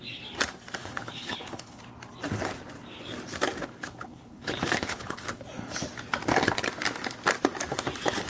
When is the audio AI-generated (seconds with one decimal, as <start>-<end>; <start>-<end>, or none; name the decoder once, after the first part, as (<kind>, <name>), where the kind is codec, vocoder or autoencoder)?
0.8-1.8 (codec, HILCodec); 3.6-5.4